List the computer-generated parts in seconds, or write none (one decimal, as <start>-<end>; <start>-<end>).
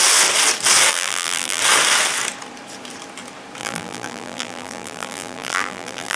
0.9-1.6; 3.6-6.2